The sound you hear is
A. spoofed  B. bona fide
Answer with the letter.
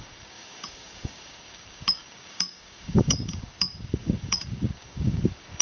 A